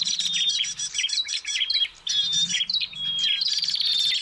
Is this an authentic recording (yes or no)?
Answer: no